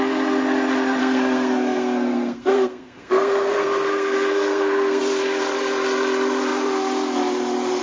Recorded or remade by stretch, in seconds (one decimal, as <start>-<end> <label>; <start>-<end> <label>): 0.0-1.0 recorded; 1.0-5.0 remade; 5.0-7.8 recorded